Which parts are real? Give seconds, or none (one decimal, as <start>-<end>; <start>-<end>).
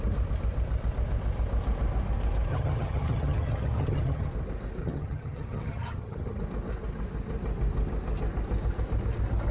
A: 0.0-2.5; 4.3-4.8; 6.4-9.5